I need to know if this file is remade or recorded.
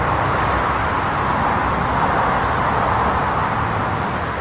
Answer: recorded